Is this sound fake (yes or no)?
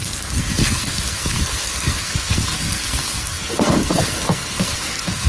yes